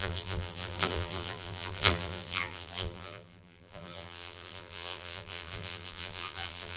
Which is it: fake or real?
fake